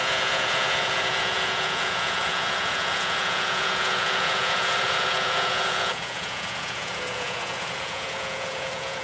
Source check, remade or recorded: remade